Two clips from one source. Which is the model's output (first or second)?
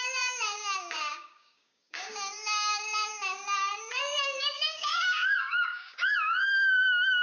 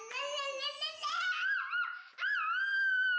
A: first